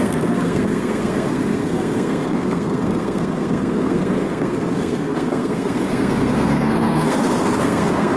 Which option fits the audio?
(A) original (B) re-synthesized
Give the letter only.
B